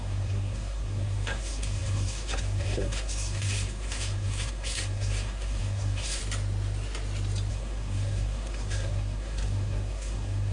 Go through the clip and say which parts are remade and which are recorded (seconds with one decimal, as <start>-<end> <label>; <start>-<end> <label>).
0.0-6.2 remade; 6.2-7.5 recorded; 7.5-10.5 remade